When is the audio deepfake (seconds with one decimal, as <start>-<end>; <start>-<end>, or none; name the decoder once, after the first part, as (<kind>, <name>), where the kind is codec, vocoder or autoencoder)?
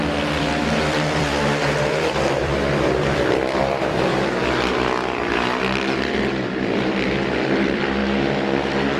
0.0-2.5 (vocoder, BigVGAN v2); 3.0-4.1; 6.2-8.0